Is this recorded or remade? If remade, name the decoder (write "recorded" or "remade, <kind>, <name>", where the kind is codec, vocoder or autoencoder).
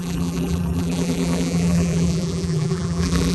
remade, vocoder, BigVGAN v2